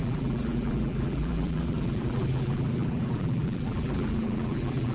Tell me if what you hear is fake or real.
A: fake